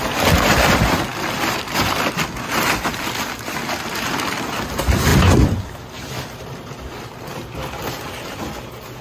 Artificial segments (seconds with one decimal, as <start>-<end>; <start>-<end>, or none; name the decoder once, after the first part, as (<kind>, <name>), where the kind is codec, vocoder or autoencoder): none